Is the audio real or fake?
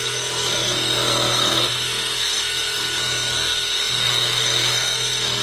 fake